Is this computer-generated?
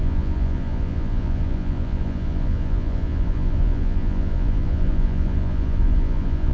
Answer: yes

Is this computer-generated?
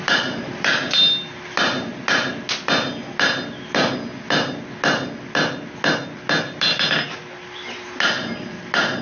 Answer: no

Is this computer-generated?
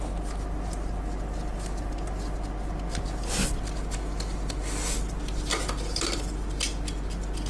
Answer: no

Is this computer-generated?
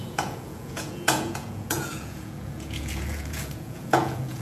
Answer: yes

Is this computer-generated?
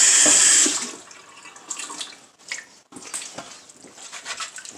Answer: no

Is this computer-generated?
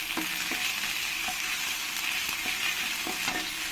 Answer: no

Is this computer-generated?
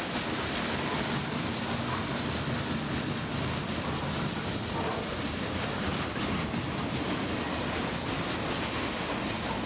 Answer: no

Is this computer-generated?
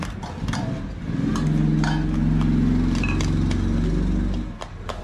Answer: no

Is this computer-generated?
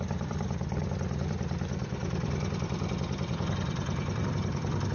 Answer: yes